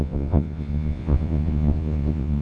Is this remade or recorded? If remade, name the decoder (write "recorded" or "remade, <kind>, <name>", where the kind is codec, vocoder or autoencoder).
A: remade, vocoder, Vocos